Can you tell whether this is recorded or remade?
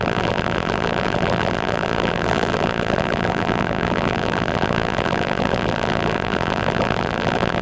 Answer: remade